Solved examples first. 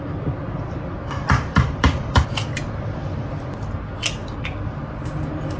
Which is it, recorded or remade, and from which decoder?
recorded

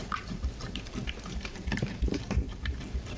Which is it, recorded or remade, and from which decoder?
remade, vocoder, BigVGAN v2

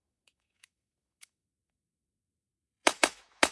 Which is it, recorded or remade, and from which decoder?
remade, autoencoder, DAC-VAE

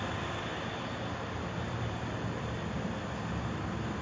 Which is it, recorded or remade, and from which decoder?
recorded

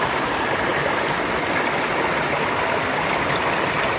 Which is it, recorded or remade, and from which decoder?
recorded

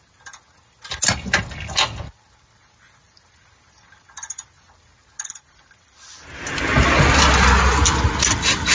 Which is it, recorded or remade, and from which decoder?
recorded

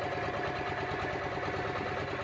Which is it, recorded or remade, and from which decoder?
recorded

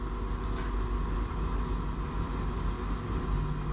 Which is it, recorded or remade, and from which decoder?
recorded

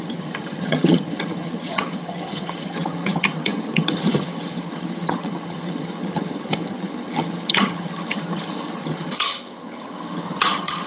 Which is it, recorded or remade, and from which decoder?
remade, vocoder, HiFi-GAN